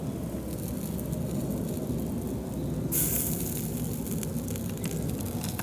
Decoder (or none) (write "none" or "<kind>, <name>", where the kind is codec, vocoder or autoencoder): none